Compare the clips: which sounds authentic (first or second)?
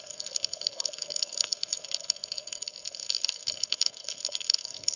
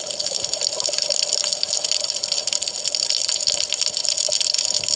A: second